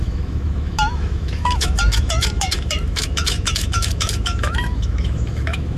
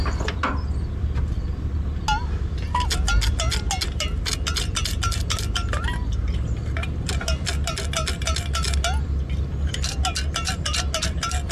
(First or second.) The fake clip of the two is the first